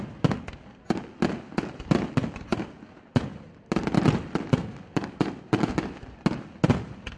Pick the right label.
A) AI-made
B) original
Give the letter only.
B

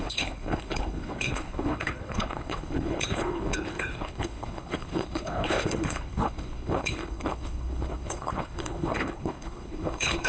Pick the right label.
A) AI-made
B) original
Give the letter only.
A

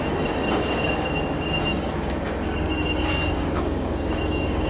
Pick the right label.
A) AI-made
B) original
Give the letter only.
A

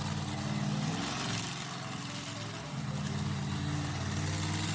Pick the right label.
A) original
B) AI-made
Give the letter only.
A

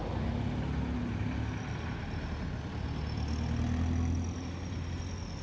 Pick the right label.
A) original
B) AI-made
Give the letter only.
A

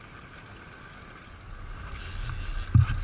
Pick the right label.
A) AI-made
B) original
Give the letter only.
B